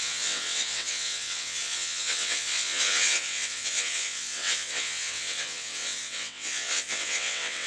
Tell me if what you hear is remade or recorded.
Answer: remade